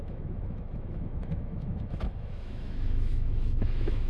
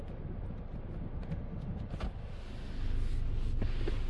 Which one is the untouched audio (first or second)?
second